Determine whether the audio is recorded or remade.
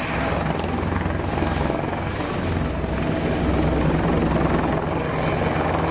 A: recorded